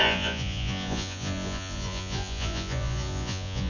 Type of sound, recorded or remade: remade